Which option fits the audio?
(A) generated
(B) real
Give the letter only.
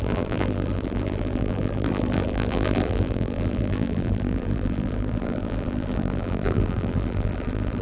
A